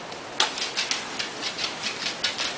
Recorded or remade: recorded